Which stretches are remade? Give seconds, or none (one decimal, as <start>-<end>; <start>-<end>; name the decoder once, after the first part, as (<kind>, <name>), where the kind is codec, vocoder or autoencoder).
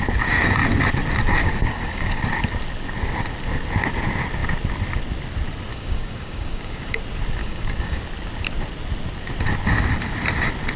1.4-2.2 (codec, DAC); 5.7-7.0; 7.4-8.0